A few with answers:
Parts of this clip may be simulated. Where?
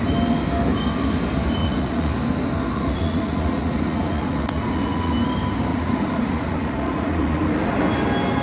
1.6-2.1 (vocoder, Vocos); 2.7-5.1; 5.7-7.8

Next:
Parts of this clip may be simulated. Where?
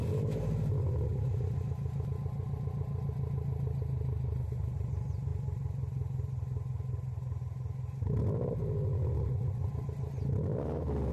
none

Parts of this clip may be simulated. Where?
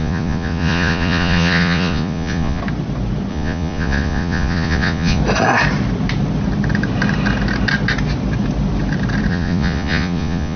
0.0-2.6 (vocoder, Vocos); 3.3-5.2; 9.3-10.6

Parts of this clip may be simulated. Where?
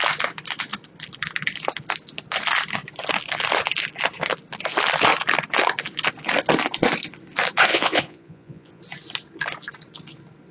7.7-8.8 (vocoder, Vocos)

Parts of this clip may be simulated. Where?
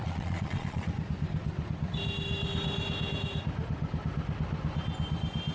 0.0-0.9 (vocoder, Vocos)